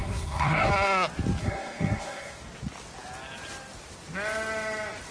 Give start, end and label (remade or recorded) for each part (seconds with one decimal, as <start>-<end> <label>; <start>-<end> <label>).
0.0-0.7 remade; 0.7-1.4 recorded; 1.4-2.4 remade; 2.4-5.1 recorded